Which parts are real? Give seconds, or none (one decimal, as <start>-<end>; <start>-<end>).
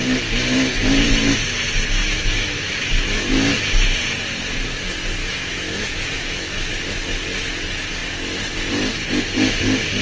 0.0-2.0; 3.5-5.2; 6.7-10.0